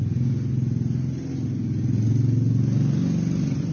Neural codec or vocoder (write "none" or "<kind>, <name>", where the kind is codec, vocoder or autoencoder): none